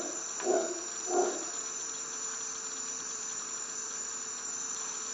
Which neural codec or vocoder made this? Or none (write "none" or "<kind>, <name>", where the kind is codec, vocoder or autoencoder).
vocoder, BigVGAN v2